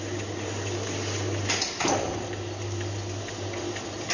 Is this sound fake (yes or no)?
no